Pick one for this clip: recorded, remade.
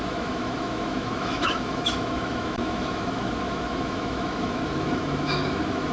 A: remade